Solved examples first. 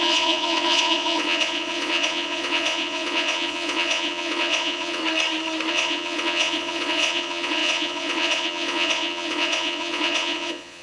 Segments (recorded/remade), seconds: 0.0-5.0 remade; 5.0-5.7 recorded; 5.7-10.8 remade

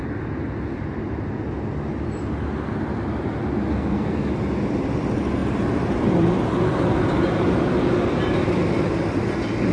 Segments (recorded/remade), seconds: 0.0-3.7 recorded; 3.7-4.3 remade; 4.3-9.7 recorded